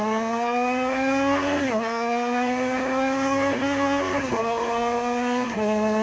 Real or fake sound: fake